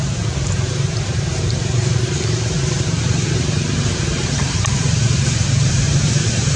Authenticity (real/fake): fake